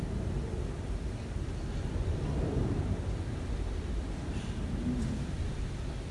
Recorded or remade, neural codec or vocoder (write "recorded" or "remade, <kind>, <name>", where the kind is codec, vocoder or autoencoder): recorded